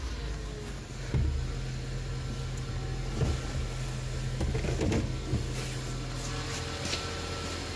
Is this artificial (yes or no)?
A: no